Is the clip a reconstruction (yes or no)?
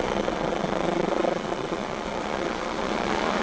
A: yes